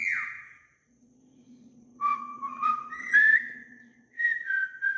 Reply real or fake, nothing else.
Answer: fake